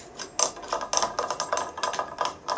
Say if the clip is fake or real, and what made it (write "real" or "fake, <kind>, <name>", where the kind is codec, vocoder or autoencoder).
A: real